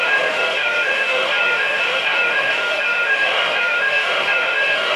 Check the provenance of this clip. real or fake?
fake